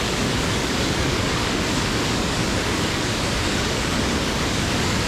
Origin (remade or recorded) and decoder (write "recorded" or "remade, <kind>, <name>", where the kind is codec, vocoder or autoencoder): remade, codec, DAC